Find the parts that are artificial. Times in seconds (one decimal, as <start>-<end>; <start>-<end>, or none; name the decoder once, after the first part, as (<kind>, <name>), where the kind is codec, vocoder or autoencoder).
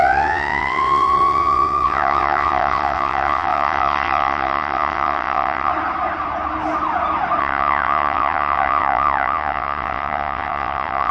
0.0-5.7 (vocoder, WaveNeXt); 7.4-11.1